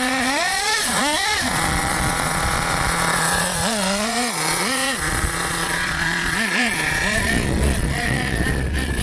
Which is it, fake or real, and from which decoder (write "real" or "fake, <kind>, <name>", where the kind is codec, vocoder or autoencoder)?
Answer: fake, vocoder, Vocos